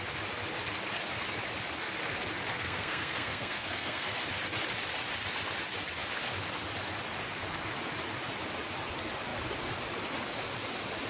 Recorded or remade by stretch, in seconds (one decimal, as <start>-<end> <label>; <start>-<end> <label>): 0.0-2.5 recorded; 2.5-4.2 remade; 4.2-11.1 recorded

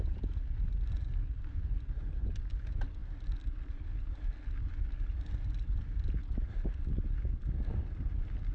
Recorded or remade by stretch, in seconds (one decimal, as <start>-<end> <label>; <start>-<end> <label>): 0.0-8.5 recorded

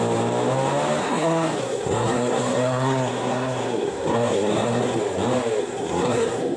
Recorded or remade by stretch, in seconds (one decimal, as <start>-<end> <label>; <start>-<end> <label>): 0.0-1.0 recorded; 1.0-5.0 remade; 5.0-5.6 recorded; 5.6-6.6 remade

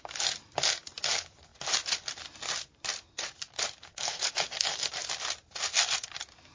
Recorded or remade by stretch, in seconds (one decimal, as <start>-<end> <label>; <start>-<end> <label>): 0.0-3.9 recorded; 3.9-4.9 remade; 4.9-6.5 recorded

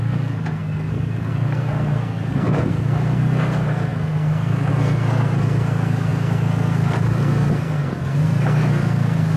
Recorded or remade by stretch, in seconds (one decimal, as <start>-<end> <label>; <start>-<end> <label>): 0.0-9.4 remade

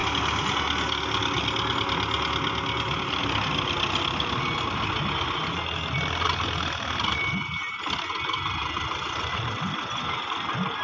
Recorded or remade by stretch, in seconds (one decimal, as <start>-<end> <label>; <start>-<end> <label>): 0.0-10.8 recorded